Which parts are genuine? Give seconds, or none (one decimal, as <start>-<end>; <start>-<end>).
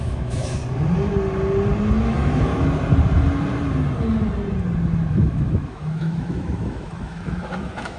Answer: 0.6-2.1; 2.5-5.1